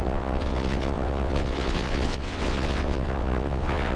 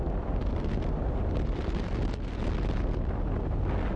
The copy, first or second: first